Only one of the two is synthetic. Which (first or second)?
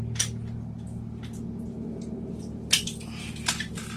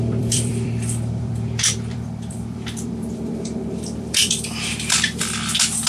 second